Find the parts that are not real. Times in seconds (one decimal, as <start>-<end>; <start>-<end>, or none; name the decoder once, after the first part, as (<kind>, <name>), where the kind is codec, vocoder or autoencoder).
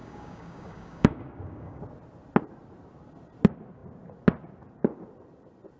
0.0-1.8 (codec, DAC)